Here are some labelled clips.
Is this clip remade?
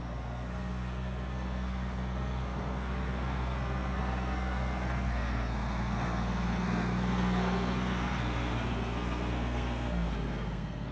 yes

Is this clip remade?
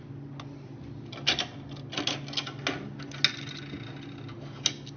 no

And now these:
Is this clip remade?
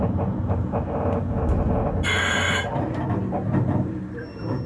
no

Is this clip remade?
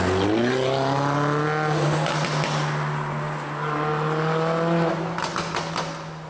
no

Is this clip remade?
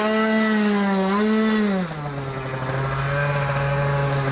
no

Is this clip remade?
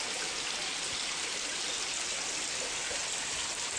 no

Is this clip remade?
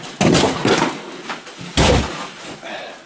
no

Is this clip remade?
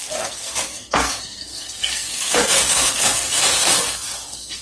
yes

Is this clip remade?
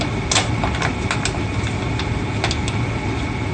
no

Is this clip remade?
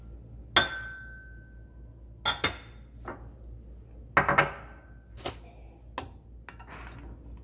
no